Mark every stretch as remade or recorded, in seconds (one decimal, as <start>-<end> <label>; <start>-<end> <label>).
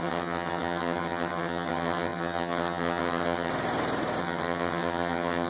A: 0.0-3.5 remade; 3.5-4.2 recorded; 4.2-5.5 remade